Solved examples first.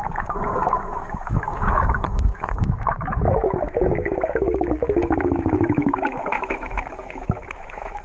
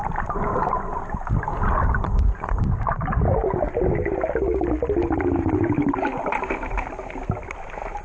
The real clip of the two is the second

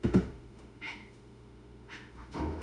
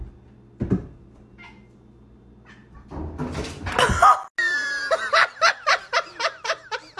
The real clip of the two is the second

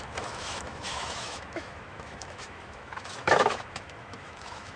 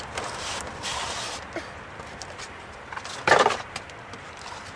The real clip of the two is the second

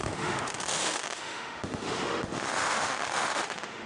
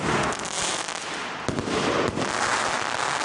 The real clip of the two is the second